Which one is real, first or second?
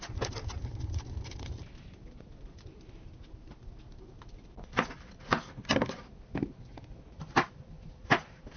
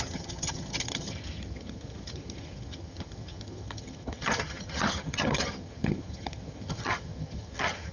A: first